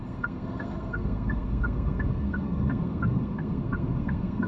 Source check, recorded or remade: remade